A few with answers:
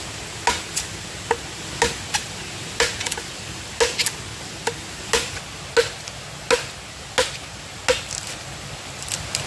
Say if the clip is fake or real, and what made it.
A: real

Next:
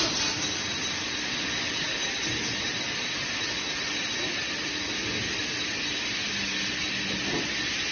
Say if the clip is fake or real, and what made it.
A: real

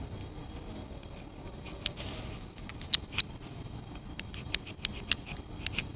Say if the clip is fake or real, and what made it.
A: real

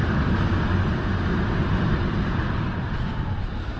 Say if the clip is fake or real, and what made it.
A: real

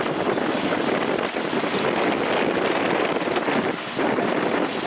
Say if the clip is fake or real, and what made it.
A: real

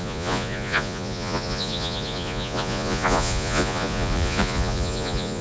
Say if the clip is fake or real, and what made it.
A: fake, vocoder, Vocos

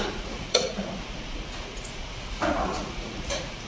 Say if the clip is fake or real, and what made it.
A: fake, vocoder, Vocos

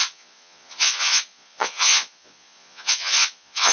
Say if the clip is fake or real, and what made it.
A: fake, vocoder, Vocos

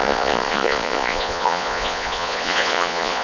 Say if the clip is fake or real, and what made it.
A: fake, vocoder, Vocos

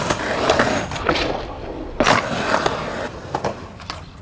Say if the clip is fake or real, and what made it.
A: real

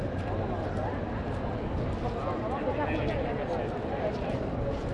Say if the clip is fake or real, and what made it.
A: real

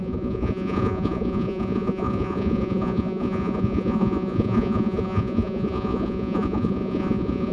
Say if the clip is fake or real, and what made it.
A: fake, vocoder, Vocos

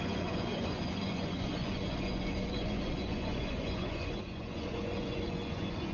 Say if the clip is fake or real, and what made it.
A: fake, vocoder, Vocos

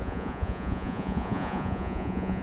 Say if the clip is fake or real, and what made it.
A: fake, vocoder, Vocos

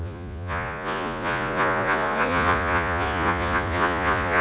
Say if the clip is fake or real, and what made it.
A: fake, vocoder, Vocos